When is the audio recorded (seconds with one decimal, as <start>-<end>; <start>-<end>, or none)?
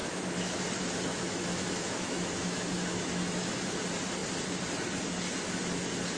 0.6-1.1; 3.8-6.2